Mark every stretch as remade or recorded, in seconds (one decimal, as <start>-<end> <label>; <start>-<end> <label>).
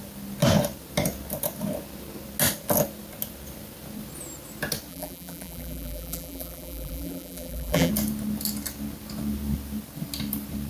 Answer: 0.0-4.9 recorded; 4.9-7.9 remade; 7.9-10.7 recorded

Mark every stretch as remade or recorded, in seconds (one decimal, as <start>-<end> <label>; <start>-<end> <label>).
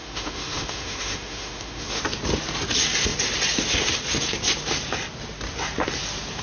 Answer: 0.0-2.0 remade; 2.0-6.4 recorded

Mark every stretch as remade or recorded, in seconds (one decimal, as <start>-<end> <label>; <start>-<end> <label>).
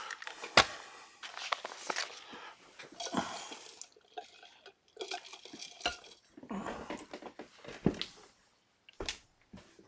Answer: 0.0-9.9 recorded